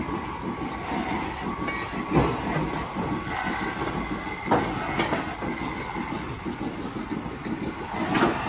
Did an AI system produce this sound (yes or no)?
no